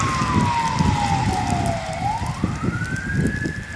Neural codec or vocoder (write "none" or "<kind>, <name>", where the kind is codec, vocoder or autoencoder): none